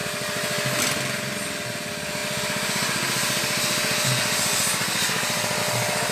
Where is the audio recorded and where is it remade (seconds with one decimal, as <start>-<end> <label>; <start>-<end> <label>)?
0.0-6.1 recorded